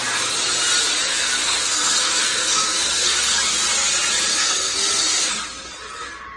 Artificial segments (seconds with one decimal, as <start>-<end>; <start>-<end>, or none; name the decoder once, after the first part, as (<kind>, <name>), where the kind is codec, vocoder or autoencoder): 1.1-3.4 (codec, SNAC); 4.3-5.3